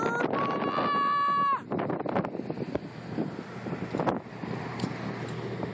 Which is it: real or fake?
real